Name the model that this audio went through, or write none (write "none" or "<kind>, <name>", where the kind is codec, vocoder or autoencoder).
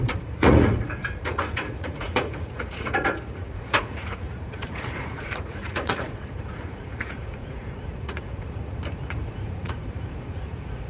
vocoder, Vocos